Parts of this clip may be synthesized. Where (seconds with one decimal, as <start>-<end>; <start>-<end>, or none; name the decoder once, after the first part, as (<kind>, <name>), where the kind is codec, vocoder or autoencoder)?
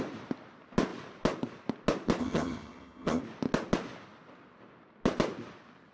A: 2.2-3.2 (vocoder, HiFi-GAN)